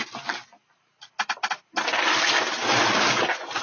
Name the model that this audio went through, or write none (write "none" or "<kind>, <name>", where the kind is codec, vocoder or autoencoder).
none